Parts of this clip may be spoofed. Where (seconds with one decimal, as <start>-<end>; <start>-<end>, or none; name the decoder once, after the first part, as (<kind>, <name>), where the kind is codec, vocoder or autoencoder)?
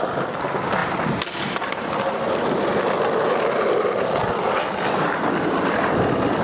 none